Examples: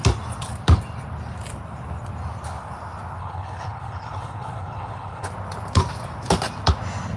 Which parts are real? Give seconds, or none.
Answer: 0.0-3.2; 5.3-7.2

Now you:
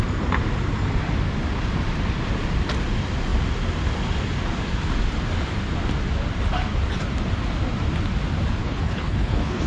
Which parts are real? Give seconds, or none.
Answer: 0.0-8.6

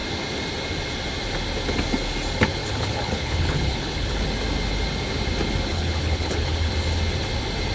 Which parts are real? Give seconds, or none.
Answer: 0.0-2.6; 4.2-5.7; 6.7-7.7

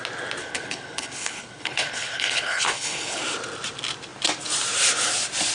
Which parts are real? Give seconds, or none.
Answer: 0.0-0.4; 3.2-5.5

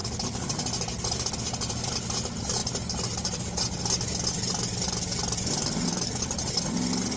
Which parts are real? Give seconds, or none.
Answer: 0.0-7.2

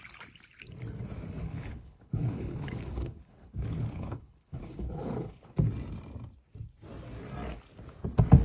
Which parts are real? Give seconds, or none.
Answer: 0.0-1.4; 5.5-8.4

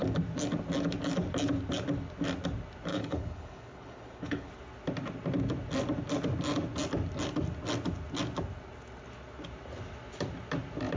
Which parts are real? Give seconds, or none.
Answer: 0.0-2.9; 4.5-11.0